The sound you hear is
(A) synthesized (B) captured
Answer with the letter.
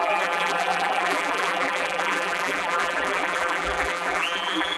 A